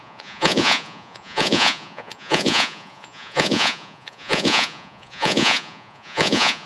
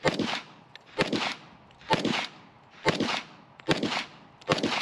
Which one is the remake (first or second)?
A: first